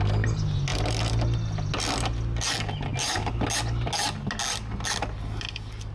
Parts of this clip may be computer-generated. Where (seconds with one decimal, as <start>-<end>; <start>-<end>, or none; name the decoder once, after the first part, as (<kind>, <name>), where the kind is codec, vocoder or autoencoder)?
none